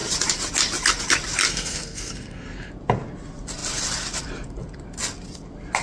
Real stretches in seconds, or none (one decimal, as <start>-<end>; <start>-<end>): 0.0-1.5; 2.7-5.8